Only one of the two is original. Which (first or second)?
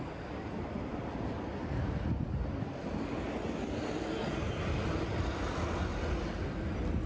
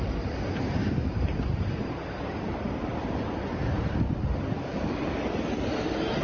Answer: first